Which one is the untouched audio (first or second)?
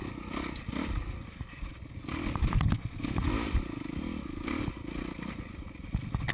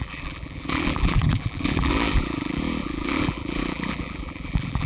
first